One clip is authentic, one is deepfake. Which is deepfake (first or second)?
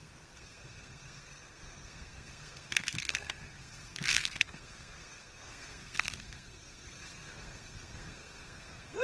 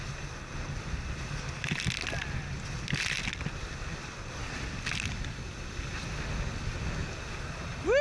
first